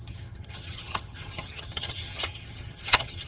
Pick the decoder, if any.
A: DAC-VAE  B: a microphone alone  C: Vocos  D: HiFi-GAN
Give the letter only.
D